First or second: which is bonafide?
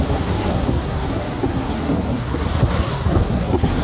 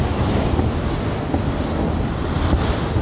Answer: second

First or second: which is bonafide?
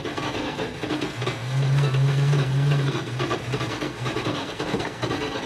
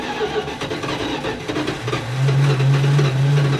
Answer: second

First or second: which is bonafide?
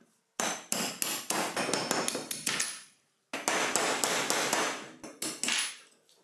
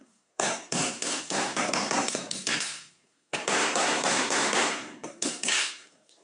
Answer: first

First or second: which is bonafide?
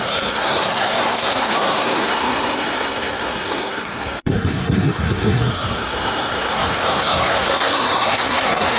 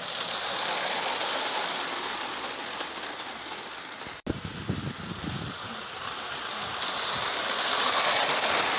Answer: second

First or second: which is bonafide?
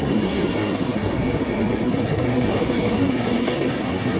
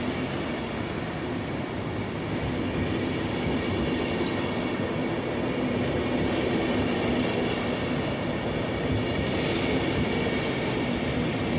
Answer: second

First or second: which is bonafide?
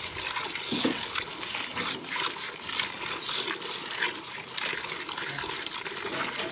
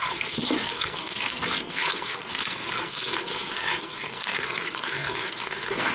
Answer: first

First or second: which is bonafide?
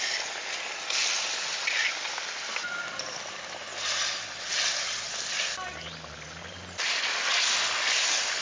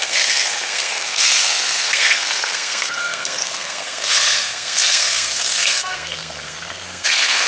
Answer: first